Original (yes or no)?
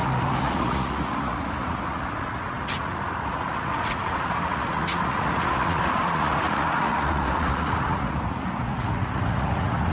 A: no